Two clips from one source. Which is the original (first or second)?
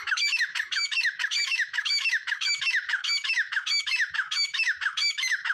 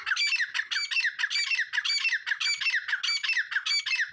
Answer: second